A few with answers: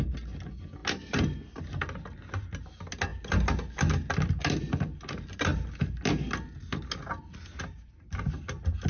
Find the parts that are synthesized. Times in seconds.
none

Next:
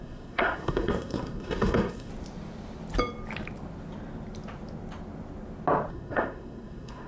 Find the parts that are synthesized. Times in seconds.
0.0-2.1 (codec, SNAC); 5.9-7.1

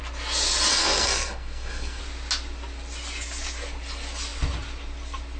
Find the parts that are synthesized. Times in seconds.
0.7-2.0 (codec, SNAC)